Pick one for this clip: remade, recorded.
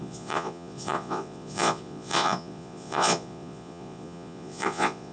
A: remade